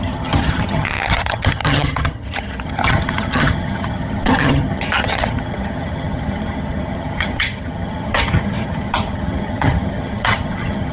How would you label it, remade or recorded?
remade